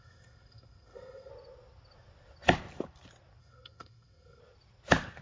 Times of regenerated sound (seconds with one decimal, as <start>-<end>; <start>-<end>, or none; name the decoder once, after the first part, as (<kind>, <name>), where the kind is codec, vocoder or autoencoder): 0.0-1.3 (codec, SNAC); 3.4-4.4